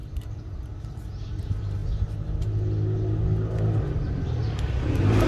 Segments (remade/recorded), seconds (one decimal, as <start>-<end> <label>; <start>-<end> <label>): 0.0-1.8 remade; 1.8-5.3 recorded